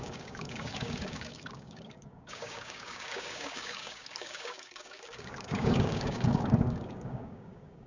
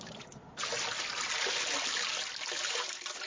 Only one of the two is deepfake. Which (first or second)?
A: first